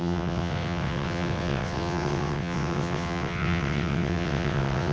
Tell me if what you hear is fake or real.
fake